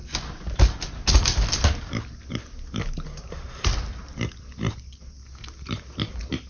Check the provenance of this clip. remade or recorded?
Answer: recorded